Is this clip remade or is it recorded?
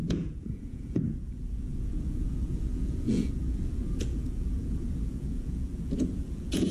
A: remade